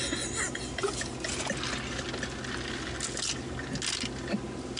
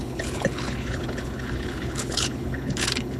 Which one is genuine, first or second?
first